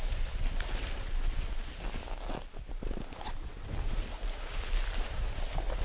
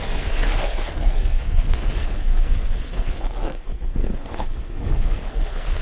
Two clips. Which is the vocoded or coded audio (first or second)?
second